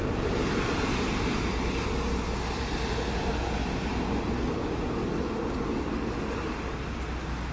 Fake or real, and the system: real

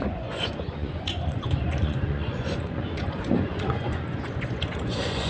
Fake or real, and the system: fake, vocoder, Vocos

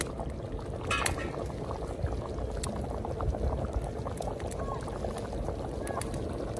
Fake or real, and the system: real